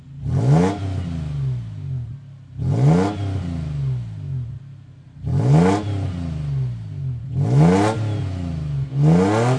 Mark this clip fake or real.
real